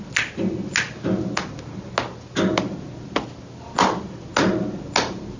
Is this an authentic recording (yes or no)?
yes